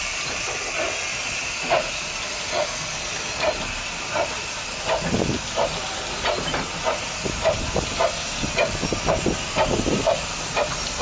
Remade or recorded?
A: recorded